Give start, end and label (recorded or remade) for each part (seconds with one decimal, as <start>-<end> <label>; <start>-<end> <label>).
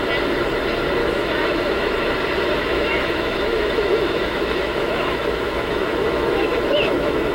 0.0-1.0 recorded; 1.0-2.1 remade; 2.1-2.6 recorded; 2.6-7.3 remade